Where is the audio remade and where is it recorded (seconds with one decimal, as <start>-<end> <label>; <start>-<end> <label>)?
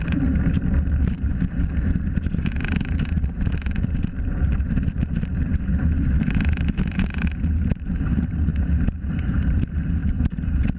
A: 0.0-10.8 remade